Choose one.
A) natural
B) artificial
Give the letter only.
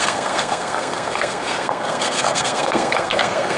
B